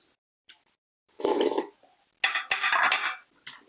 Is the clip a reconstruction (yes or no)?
no